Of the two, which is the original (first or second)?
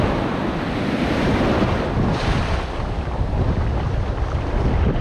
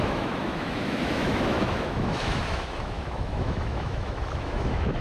first